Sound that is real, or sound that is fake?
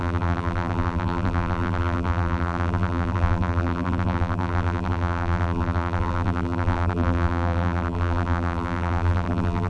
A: fake